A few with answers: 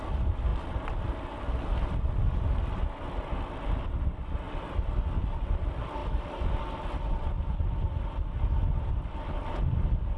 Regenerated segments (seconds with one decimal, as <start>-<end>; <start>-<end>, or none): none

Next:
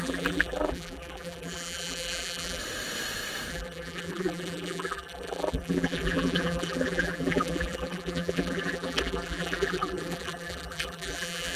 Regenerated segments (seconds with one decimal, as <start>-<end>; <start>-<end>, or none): 0.0-2.6; 3.5-11.6

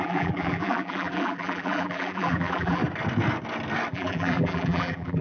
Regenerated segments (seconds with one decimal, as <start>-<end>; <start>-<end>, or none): 0.0-2.8; 3.9-5.2

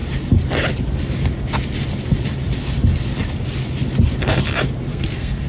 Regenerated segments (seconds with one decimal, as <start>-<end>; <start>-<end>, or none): 4.9-5.5

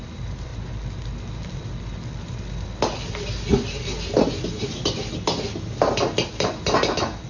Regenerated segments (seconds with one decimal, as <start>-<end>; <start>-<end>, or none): 0.0-0.5; 1.4-3.5; 6.3-7.3

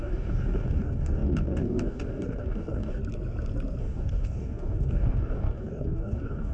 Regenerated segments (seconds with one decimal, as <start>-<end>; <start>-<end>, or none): 0.0-3.0; 3.8-6.5